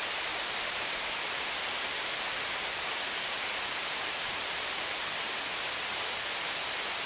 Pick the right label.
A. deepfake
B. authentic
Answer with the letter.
B